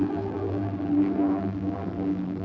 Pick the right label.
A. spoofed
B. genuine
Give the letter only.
A